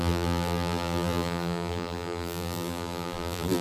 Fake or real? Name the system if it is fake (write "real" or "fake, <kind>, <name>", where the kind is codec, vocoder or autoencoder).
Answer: fake, vocoder, BigVGAN v2